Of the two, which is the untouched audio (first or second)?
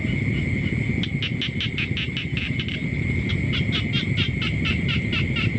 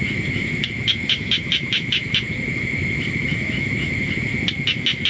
first